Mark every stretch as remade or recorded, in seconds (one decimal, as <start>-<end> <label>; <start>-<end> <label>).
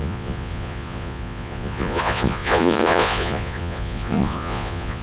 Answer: 0.0-5.0 remade